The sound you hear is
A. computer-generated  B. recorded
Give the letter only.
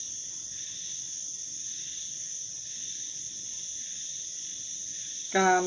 B